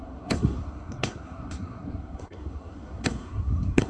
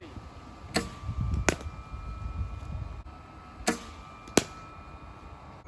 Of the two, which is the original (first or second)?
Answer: second